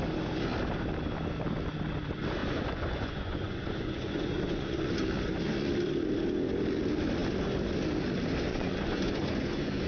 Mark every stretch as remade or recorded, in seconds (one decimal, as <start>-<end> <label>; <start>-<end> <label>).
0.0-2.4 recorded; 2.4-4.9 remade; 4.9-8.5 recorded; 8.5-9.9 remade